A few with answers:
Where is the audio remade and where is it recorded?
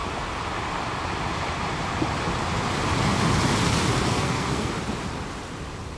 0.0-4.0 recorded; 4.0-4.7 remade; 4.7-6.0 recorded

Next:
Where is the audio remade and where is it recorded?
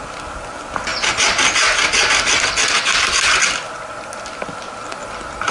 0.0-5.5 recorded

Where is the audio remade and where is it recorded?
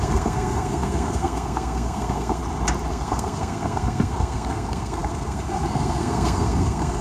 0.0-2.4 remade; 2.4-2.9 recorded; 2.9-7.0 remade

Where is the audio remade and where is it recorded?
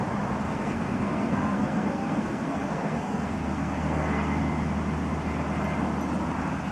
0.0-0.4 recorded; 0.4-4.4 remade; 4.4-6.7 recorded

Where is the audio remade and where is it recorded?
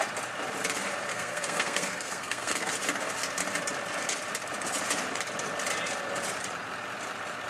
0.0-1.1 recorded; 1.1-2.7 remade; 2.7-7.5 recorded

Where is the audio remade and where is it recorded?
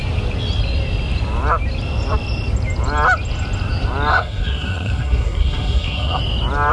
0.0-4.1 recorded; 4.1-6.2 remade; 6.2-6.7 recorded